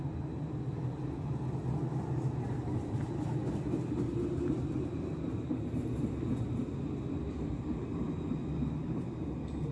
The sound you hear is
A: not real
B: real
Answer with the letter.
B